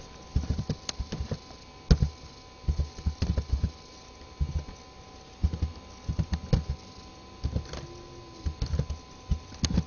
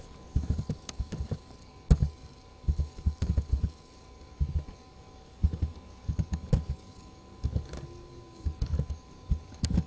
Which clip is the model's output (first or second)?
second